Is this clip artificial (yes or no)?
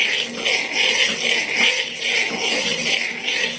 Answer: no